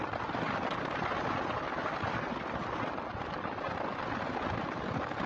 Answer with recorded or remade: recorded